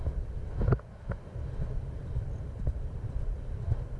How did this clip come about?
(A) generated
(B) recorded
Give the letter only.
B